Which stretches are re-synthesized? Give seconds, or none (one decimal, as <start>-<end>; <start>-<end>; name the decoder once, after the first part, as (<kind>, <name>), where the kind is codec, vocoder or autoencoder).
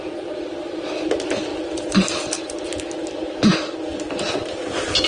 none